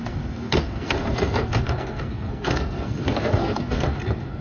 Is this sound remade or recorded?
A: remade